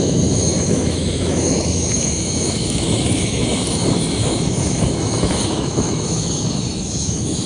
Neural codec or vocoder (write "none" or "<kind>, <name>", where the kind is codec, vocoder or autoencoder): autoencoder, DAC-VAE